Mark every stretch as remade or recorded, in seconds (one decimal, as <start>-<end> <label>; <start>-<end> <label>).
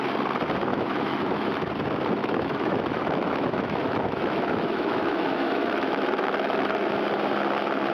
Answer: 0.0-0.7 recorded; 0.7-1.7 remade; 1.7-2.2 recorded; 2.2-6.9 remade; 6.9-7.9 recorded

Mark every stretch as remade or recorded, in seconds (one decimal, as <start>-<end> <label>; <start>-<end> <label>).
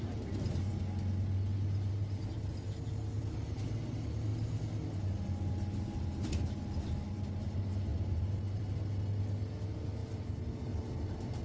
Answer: 0.0-11.4 recorded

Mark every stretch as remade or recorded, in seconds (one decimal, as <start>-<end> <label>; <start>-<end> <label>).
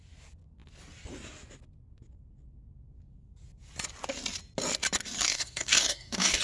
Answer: 0.0-5.3 recorded; 5.3-6.4 remade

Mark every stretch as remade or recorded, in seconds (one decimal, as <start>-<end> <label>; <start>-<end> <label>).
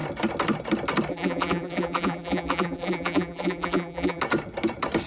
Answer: 0.0-1.1 recorded; 1.1-4.2 remade; 4.2-5.1 recorded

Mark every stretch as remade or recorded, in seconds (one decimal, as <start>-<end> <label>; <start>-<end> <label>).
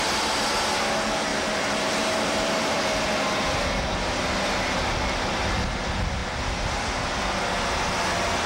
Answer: 0.0-1.3 recorded; 1.3-2.8 remade; 2.8-8.5 recorded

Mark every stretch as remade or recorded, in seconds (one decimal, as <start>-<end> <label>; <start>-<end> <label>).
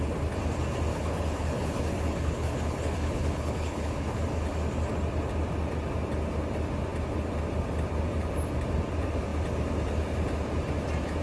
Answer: 0.0-0.9 recorded; 0.9-4.2 remade; 4.2-11.2 recorded